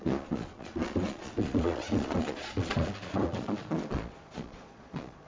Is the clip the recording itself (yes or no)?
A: no